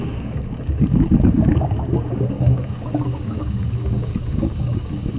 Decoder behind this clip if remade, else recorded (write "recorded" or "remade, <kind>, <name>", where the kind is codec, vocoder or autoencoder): remade, codec, DAC